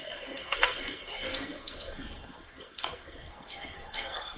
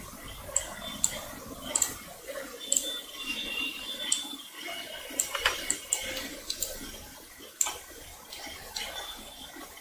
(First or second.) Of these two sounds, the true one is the second